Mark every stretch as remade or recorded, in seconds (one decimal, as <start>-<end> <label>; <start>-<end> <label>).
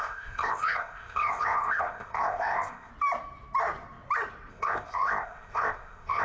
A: 0.0-2.9 remade; 2.9-4.5 recorded; 4.5-6.2 remade